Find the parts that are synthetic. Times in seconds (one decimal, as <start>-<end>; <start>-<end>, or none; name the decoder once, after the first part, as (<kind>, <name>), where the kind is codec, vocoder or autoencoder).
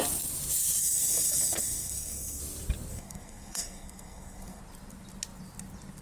0.8-2.4 (codec, SNAC); 2.9-4.6